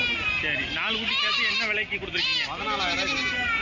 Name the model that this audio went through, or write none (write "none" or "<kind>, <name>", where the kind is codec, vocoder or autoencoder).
none